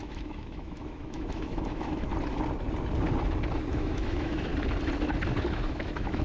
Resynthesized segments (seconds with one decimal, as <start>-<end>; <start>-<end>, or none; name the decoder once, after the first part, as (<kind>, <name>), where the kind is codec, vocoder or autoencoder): 0.0-2.1 (autoencoder, DAC-VAE); 3.7-4.5; 5.4-6.2